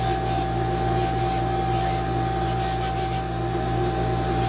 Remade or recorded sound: recorded